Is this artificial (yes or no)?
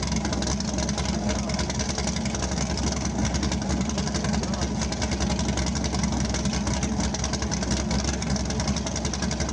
no